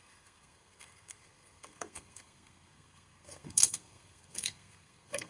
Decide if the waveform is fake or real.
fake